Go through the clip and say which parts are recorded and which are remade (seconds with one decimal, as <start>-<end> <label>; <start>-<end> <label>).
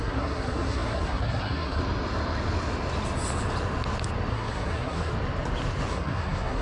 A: 0.0-1.8 remade; 1.8-4.3 recorded; 4.3-5.1 remade; 5.1-5.9 recorded; 5.9-6.6 remade